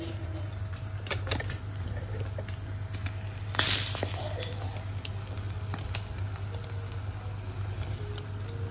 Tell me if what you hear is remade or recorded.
recorded